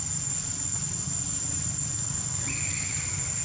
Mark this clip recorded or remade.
recorded